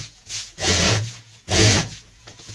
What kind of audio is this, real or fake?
fake